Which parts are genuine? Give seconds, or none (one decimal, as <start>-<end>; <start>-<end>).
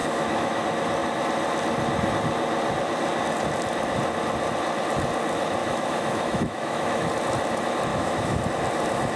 0.6-5.6; 7.1-7.9; 8.4-9.2